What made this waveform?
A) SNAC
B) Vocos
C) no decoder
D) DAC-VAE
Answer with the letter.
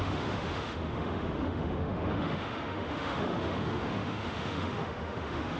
D